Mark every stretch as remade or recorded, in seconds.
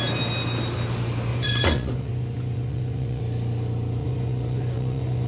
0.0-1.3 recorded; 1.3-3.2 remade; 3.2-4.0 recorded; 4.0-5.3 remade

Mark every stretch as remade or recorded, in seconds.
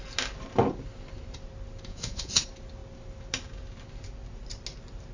0.0-1.9 recorded; 1.9-2.4 remade; 2.4-5.1 recorded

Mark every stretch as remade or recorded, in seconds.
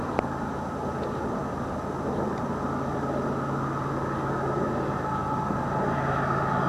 0.0-6.7 recorded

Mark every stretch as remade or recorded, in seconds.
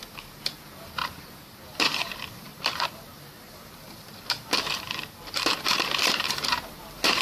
0.0-0.5 recorded; 0.5-7.2 remade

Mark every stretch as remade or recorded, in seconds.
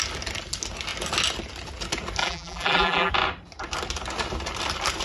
0.0-2.2 recorded; 2.2-3.1 remade; 3.1-5.0 recorded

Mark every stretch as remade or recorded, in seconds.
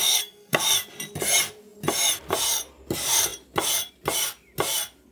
0.0-0.6 remade; 0.6-5.1 recorded